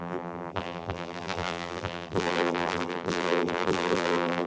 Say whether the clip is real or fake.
fake